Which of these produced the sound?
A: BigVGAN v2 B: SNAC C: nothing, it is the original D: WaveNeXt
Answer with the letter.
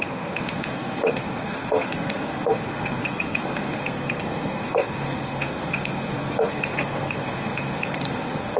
B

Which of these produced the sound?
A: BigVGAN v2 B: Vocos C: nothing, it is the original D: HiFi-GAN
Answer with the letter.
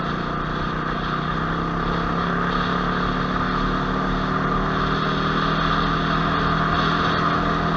C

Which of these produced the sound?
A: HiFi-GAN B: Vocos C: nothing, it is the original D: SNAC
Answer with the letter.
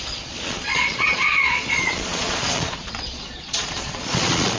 B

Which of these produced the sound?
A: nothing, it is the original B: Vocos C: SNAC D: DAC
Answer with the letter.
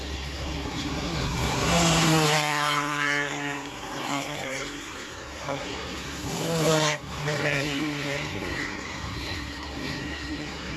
C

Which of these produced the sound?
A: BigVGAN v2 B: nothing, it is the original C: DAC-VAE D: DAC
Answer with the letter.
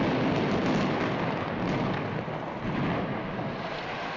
B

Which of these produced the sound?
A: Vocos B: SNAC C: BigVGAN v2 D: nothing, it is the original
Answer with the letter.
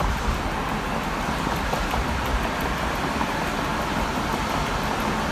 D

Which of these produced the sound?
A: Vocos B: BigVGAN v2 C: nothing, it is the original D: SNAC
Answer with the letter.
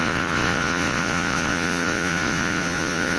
A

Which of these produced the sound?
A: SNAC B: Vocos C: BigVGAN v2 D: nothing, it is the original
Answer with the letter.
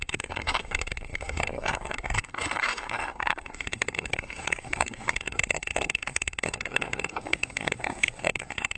A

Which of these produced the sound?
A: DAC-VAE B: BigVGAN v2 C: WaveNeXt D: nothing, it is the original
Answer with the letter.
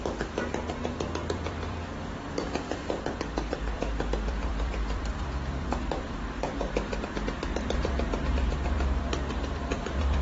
B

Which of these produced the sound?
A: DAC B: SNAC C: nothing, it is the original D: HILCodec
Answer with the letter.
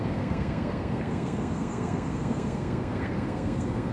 B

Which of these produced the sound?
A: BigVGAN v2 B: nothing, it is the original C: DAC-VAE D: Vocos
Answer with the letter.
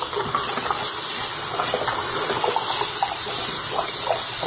B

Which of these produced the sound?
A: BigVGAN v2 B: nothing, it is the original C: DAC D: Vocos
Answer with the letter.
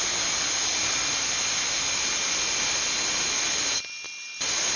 B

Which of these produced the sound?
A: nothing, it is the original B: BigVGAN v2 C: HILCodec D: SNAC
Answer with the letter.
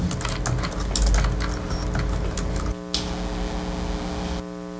A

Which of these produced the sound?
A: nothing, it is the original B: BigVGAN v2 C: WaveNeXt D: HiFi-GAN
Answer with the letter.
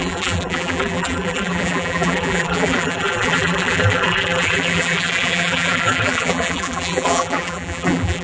B